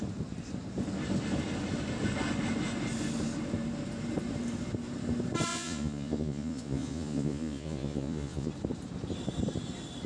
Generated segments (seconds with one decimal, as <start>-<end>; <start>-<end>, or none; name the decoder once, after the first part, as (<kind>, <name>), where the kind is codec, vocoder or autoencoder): 5.5-8.5 (vocoder, Vocos)